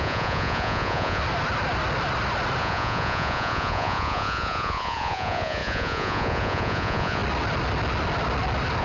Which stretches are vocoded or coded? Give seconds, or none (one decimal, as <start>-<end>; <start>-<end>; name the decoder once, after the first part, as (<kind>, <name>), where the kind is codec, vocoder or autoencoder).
0.0-1.2 (vocoder, Vocos); 2.6-7.2